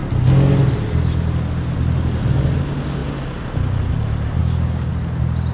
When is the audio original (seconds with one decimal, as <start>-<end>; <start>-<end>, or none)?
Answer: 0.0-4.4; 4.9-5.5